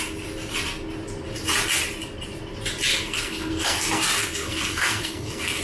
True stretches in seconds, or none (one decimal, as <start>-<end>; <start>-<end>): 0.0-2.9